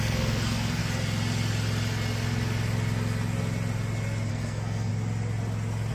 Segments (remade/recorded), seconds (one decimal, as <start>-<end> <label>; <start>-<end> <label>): 0.0-0.8 remade; 0.8-4.3 recorded; 4.3-4.9 remade; 4.9-5.9 recorded

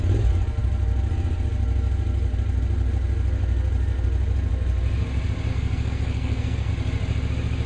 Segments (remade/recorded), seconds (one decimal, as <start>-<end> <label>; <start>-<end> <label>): 0.0-5.5 recorded; 5.5-6.7 remade; 6.7-7.7 recorded

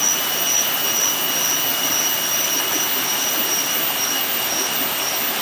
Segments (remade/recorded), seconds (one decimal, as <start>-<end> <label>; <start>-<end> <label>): 0.0-5.4 recorded

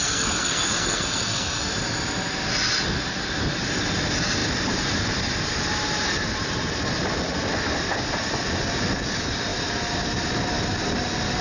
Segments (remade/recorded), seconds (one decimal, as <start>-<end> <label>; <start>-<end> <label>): 0.0-1.7 remade; 1.7-11.4 recorded